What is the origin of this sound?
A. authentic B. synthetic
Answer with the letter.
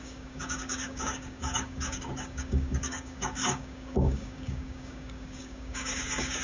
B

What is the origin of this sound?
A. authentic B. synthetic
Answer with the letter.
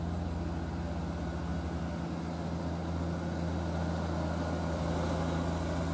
A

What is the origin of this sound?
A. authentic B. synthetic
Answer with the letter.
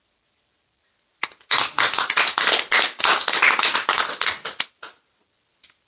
A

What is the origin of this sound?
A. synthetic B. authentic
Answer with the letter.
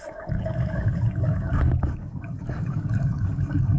A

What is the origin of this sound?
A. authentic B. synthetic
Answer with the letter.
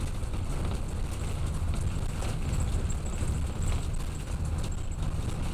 A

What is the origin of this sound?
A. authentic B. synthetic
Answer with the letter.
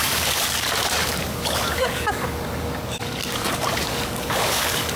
B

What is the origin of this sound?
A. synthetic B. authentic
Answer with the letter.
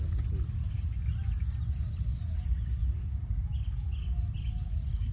B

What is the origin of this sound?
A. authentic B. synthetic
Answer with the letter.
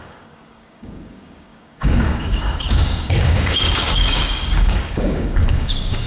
B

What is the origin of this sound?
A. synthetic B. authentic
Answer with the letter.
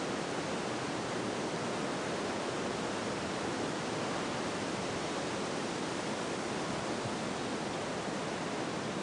B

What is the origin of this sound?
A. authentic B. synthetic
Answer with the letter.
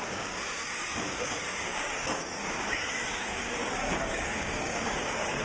B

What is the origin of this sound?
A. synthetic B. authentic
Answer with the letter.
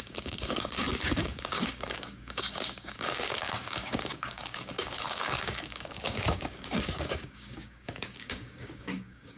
A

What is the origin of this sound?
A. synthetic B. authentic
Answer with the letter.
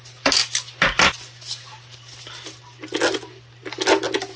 B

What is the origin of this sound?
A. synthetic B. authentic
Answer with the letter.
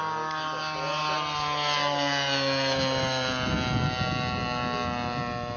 B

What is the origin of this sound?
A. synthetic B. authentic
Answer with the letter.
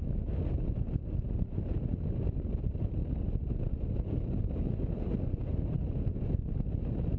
B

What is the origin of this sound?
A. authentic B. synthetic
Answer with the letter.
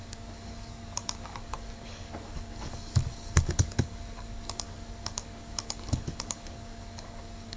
B